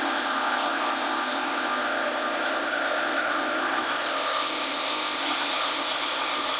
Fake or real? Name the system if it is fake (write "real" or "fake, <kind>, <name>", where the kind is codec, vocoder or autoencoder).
fake, codec, ZipCodec